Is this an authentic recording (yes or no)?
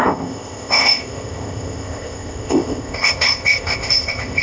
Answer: no